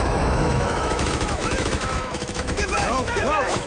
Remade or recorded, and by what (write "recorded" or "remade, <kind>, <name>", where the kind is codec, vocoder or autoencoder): remade, autoencoder, DAC-VAE